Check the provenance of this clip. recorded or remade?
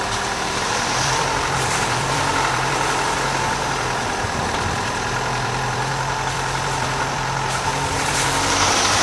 remade